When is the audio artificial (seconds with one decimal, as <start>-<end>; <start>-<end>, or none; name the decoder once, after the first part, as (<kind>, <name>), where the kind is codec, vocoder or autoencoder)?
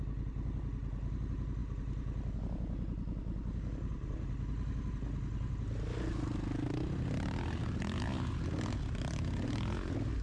none